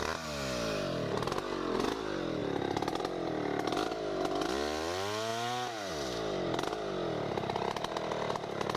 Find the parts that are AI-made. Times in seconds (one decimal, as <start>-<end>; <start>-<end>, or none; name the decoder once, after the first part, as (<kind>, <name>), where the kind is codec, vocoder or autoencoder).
none